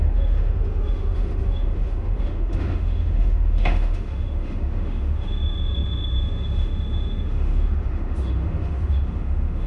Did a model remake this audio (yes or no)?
yes